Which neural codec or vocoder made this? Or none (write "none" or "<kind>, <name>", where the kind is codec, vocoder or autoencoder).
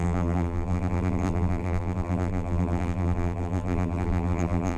vocoder, BigVGAN v2